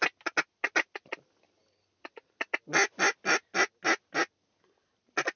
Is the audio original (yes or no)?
yes